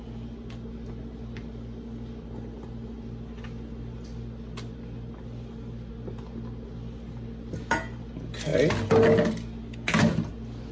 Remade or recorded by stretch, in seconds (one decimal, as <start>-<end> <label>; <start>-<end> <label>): 0.0-10.7 recorded